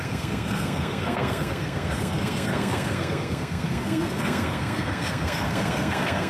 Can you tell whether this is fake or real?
fake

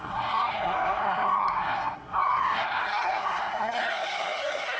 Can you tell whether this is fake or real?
fake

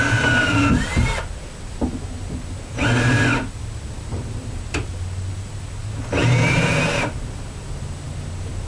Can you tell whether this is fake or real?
real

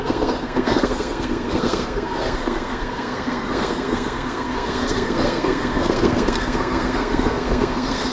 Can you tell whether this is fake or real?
fake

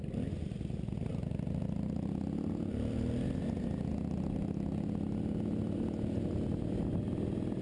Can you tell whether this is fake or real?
real